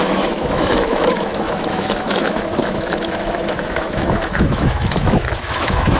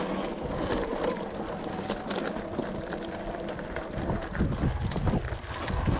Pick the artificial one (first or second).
first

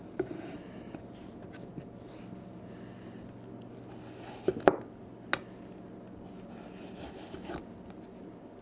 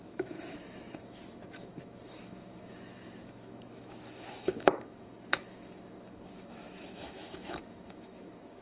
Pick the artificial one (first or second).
second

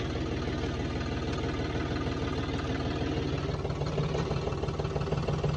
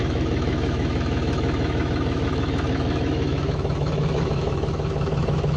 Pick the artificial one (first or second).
second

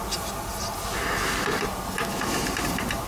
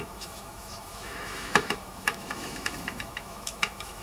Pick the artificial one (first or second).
second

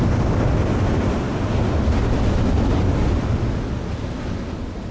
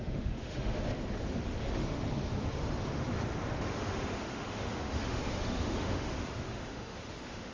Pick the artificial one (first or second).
second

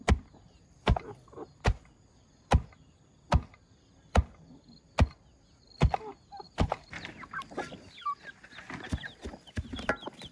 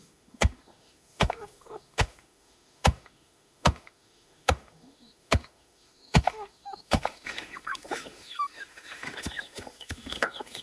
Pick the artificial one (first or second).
second